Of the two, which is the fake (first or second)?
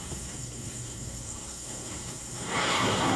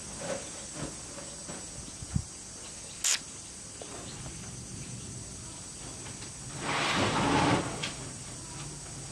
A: first